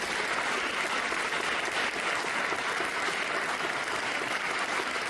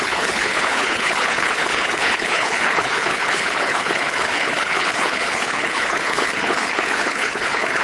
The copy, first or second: second